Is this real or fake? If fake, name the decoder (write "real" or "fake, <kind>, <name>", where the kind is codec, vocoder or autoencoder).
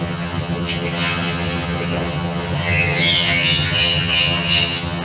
fake, vocoder, HiFi-GAN